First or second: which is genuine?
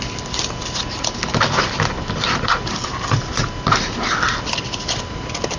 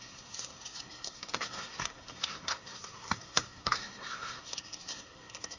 first